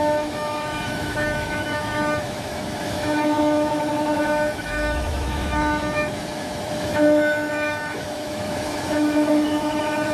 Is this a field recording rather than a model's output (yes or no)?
no